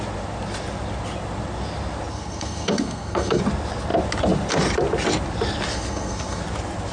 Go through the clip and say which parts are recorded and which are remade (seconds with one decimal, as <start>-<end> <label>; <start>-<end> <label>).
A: 0.0-2.1 recorded; 2.1-3.4 remade; 3.4-5.7 recorded; 5.7-6.4 remade; 6.4-6.9 recorded